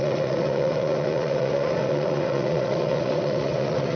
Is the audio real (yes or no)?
no